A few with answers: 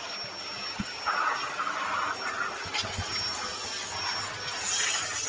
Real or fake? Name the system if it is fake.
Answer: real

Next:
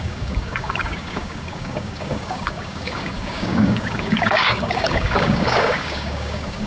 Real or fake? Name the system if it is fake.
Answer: fake, codec, DAC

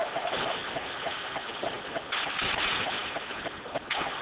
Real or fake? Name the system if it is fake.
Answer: real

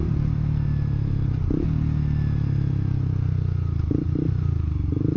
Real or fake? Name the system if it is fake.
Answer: real